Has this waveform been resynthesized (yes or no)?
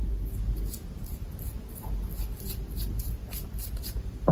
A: no